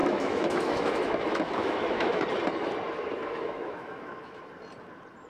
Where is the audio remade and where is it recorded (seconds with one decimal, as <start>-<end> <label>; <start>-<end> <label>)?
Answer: 0.0-2.2 remade; 2.2-3.2 recorded; 3.2-4.4 remade; 4.4-5.3 recorded

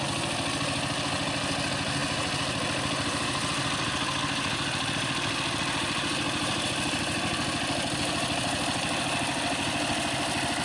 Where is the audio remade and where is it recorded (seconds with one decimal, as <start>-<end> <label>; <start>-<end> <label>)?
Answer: 0.0-10.6 recorded